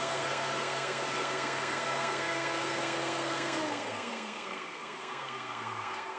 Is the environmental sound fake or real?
fake